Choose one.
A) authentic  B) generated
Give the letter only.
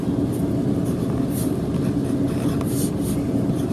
A